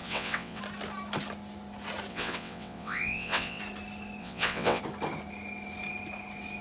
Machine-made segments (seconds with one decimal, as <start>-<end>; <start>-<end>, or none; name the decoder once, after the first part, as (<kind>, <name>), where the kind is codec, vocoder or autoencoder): 0.0-0.6 (vocoder, WaveNeXt); 2.1-3.6; 4.2-4.8